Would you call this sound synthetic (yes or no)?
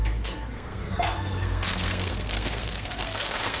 yes